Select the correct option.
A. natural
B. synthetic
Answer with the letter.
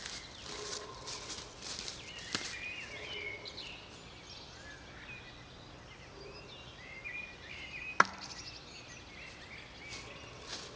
A